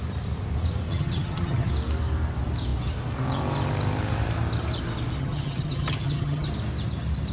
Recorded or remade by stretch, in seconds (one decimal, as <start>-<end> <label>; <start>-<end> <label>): 0.0-0.9 recorded; 0.9-1.7 remade; 1.7-5.2 recorded; 5.2-6.5 remade; 6.5-7.3 recorded